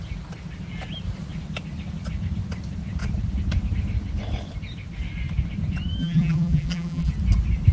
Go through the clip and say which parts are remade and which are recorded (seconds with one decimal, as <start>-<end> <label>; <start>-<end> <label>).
0.0-6.0 recorded; 6.0-7.1 remade; 7.1-7.7 recorded